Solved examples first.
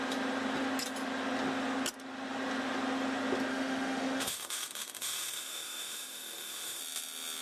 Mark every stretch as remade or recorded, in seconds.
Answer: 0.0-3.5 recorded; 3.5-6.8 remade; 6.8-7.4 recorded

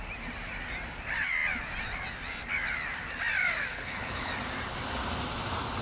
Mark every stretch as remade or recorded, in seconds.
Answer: 0.0-3.7 recorded; 3.7-4.3 remade; 4.3-5.8 recorded

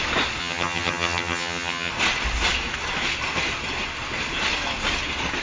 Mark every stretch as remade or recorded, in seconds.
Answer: 0.0-0.4 recorded; 0.4-1.9 remade; 1.9-5.4 recorded

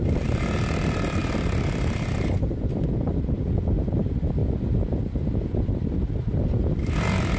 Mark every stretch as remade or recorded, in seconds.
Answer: 0.0-7.4 recorded

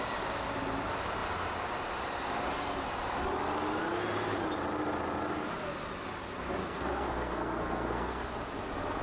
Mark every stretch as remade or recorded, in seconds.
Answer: 0.0-6.6 recorded; 6.6-8.3 remade; 8.3-9.0 recorded

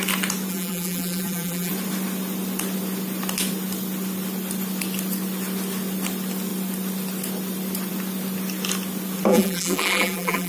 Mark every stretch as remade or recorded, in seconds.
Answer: 0.0-0.5 recorded; 0.5-1.7 remade; 1.7-9.3 recorded; 9.3-10.5 remade

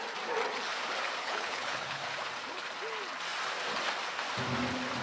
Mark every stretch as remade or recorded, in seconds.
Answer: 0.0-1.2 recorded; 1.2-2.0 remade; 2.0-5.0 recorded